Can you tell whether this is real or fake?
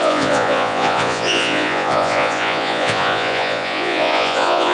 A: fake